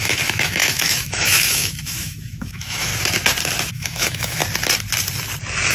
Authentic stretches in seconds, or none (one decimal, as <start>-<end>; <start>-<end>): 2.9-3.7; 4.4-5.7